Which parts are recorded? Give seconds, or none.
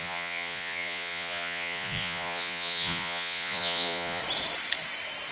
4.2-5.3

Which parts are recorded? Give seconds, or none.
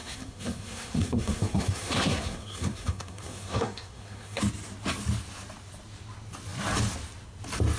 4.4-7.8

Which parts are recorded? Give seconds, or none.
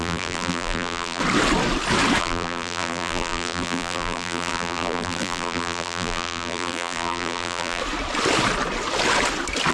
1.2-2.2; 7.8-9.7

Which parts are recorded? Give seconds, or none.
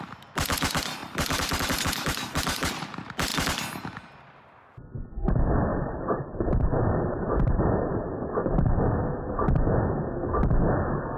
0.0-1.0; 2.7-5.7; 8.1-11.2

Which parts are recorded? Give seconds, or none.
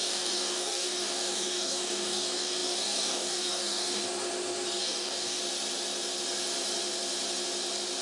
4.0-4.8; 5.4-8.0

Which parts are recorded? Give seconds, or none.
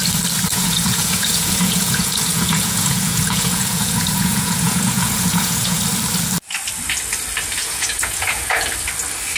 0.0-0.5; 5.8-7.6; 8.6-9.4